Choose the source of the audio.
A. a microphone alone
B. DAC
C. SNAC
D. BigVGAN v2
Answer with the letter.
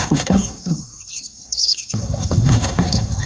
C